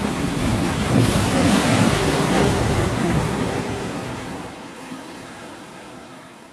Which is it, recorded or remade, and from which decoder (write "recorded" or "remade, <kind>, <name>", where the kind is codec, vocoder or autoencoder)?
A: remade, codec, SNAC